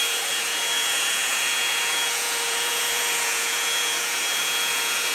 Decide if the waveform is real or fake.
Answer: fake